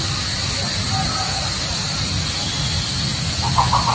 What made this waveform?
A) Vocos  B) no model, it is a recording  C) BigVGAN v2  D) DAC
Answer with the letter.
C